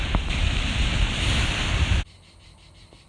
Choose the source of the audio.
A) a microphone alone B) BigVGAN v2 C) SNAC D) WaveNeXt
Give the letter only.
B